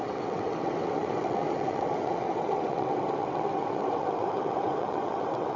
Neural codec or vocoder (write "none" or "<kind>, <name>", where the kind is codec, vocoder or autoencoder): vocoder, WaveNeXt